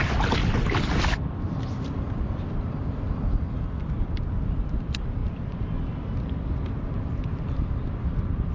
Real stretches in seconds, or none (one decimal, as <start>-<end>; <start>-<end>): 5.2-6.0